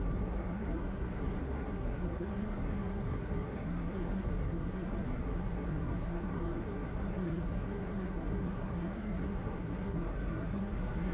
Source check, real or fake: fake